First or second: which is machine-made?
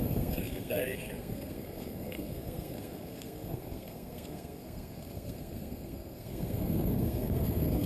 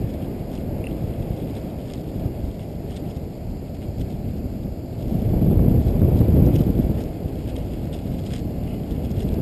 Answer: first